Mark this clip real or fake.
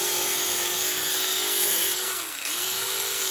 fake